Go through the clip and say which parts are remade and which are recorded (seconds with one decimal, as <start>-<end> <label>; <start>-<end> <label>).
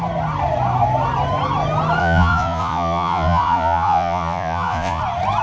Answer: 0.0-2.0 recorded; 2.0-5.0 remade; 5.0-5.4 recorded